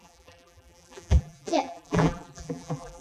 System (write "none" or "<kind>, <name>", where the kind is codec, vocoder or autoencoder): vocoder, BigVGAN v2